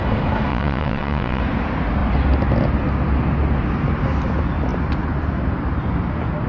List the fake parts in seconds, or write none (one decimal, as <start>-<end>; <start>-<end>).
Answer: 0.5-1.4